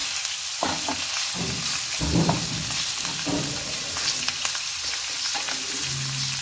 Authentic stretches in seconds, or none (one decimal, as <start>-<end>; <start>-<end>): 0.0-6.4